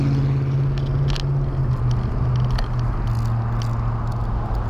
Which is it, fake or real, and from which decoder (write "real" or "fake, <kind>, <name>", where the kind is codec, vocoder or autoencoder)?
real